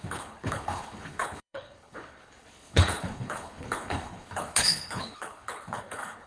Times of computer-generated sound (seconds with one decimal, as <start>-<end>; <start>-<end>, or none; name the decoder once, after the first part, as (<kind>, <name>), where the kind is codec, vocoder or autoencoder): 0.0-6.3 (codec, HILCodec)